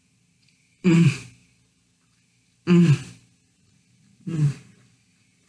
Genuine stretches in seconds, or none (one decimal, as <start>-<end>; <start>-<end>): 0.0-5.5